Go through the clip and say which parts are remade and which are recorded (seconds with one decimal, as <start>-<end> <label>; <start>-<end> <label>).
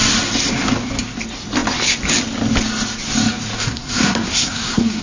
0.0-3.6 recorded; 3.6-5.0 remade